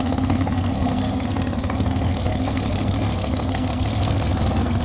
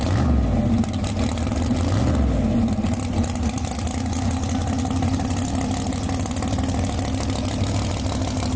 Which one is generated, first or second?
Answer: first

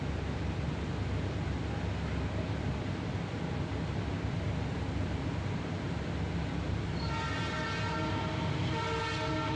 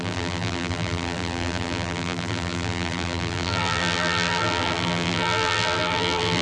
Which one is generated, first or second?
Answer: second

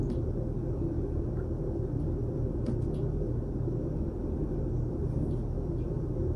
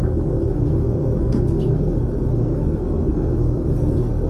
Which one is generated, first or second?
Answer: second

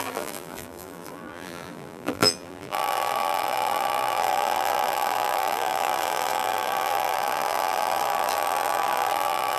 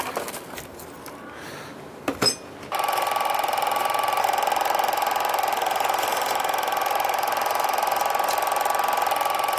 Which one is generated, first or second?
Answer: first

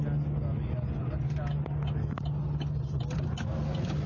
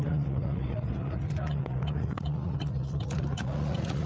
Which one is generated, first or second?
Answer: second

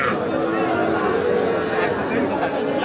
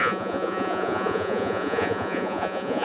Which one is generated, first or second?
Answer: second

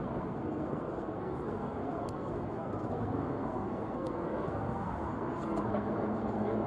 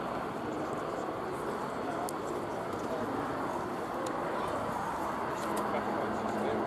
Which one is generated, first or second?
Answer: first